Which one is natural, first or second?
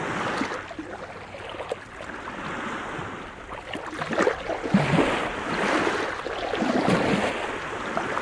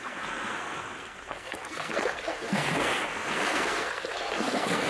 first